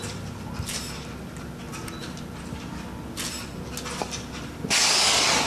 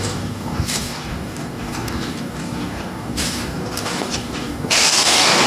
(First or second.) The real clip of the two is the first